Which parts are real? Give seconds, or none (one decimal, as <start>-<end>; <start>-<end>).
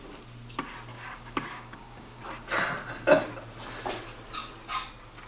0.0-0.9; 2.2-5.3